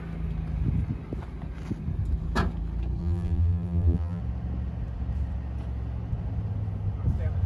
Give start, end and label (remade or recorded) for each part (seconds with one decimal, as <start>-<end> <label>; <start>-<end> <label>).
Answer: 0.0-3.0 recorded; 3.0-4.2 remade; 4.2-7.5 recorded